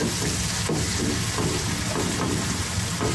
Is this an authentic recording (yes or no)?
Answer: yes